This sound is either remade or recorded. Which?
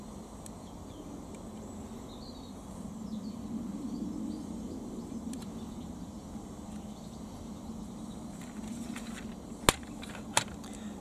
recorded